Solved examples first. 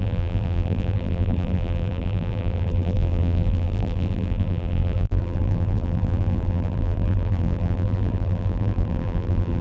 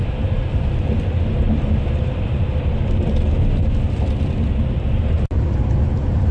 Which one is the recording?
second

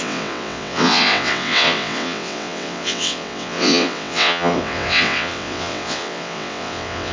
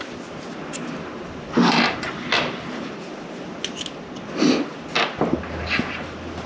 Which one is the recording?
second